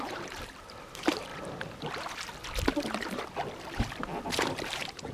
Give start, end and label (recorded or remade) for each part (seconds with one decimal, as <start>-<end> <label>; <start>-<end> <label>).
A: 0.0-1.3 remade; 1.3-4.4 recorded; 4.4-5.1 remade